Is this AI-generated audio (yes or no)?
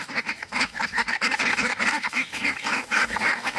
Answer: yes